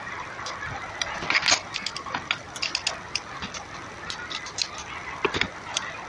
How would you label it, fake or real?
real